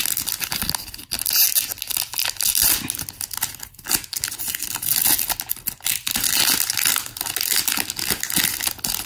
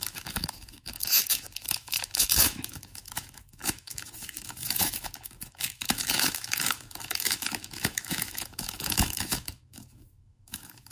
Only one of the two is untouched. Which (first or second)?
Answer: first